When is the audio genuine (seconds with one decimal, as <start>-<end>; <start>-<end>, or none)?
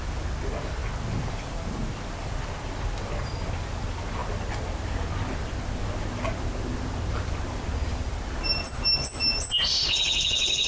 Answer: 0.0-9.8